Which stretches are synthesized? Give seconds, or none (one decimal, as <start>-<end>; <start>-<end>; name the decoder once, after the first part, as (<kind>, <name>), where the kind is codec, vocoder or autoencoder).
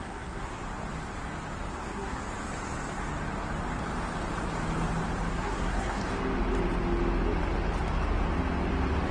0.0-0.6 (codec, SNAC); 1.7-2.2; 5.3-6.0